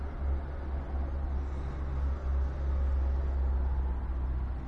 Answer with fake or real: real